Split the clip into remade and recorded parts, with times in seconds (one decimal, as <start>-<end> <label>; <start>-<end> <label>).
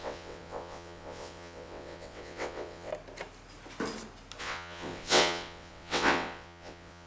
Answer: 0.0-2.9 remade; 2.9-4.4 recorded; 4.4-7.1 remade